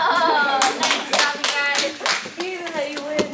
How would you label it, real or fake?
real